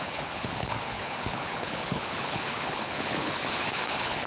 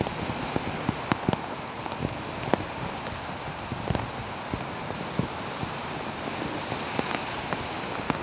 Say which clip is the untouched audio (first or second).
second